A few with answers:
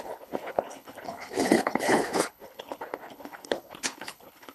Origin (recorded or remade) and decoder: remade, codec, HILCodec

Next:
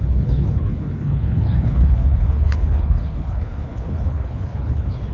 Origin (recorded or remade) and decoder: remade, codec, HILCodec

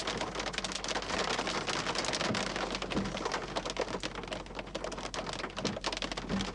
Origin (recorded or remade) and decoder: recorded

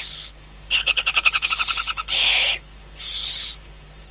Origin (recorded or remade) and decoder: remade, codec, HILCodec